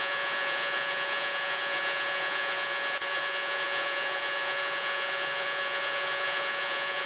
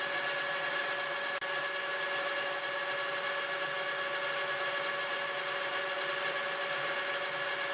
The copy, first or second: first